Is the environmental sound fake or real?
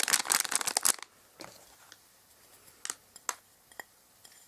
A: real